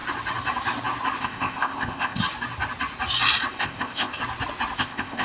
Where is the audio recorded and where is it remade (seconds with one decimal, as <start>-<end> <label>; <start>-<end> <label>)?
0.0-1.2 recorded; 1.2-2.2 remade; 2.2-3.5 recorded; 3.5-4.2 remade; 4.2-4.8 recorded; 4.8-5.2 remade